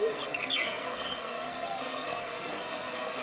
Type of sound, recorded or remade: remade